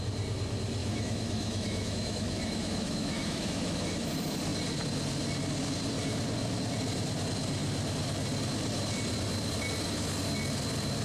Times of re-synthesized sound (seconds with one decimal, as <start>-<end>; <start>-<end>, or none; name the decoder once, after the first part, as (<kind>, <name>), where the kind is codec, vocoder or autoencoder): 0.8-4.1 (autoencoder, DAC-VAE)